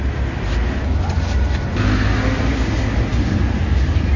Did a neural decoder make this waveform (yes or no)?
no